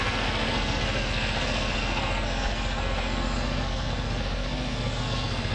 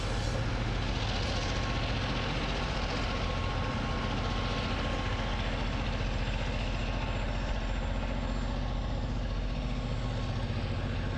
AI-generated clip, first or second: first